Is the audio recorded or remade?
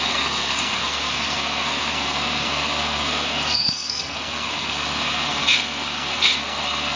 remade